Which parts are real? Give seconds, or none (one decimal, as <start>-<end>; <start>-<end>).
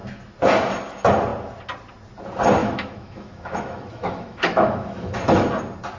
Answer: 0.0-2.6; 5.5-6.0